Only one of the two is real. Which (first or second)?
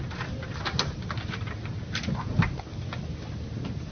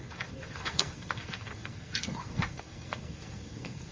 first